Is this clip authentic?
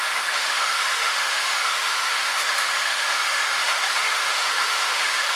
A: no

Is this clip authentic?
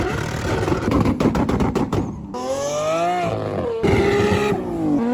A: yes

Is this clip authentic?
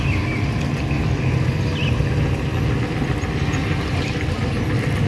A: yes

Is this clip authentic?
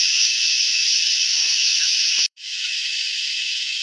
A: no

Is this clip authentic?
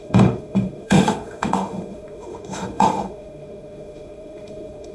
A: no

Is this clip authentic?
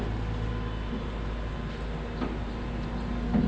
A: yes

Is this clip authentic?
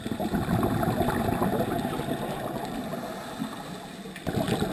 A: yes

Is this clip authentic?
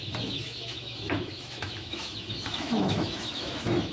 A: no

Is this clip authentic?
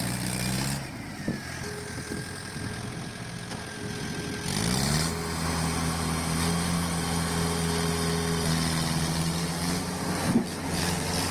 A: yes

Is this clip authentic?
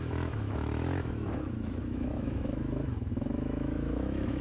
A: no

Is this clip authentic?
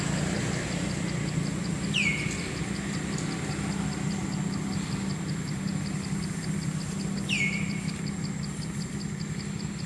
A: yes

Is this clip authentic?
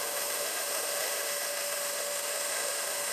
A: no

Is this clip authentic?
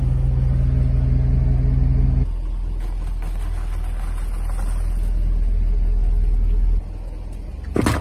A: yes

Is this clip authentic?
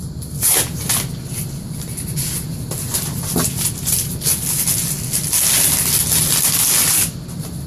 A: yes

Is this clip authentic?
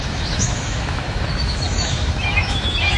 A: no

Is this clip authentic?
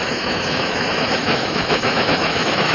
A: no